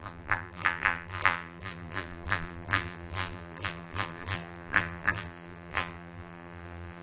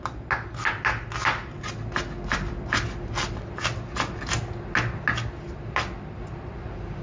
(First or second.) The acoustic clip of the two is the second